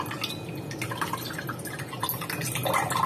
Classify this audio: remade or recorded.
recorded